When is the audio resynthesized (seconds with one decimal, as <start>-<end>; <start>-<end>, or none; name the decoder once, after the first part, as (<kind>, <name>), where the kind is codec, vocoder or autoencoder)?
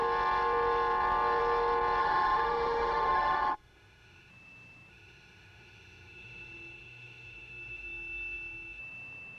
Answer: 2.0-4.3 (autoencoder, DAC-VAE); 4.9-8.8